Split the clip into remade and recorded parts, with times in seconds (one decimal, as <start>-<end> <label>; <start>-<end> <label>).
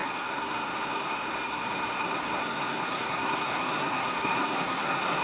0.0-5.2 remade